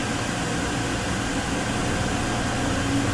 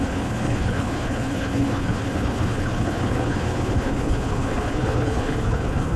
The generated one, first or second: second